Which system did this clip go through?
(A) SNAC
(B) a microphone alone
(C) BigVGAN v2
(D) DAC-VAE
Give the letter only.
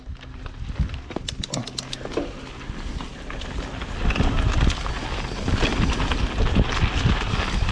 B